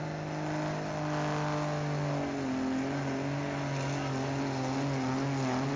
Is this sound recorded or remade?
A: recorded